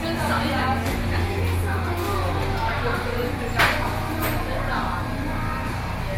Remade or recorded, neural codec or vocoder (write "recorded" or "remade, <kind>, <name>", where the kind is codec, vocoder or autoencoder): recorded